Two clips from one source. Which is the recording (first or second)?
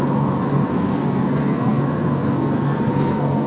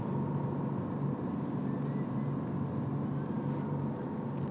second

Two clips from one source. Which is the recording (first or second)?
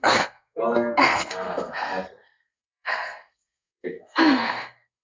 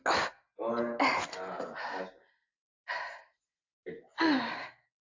second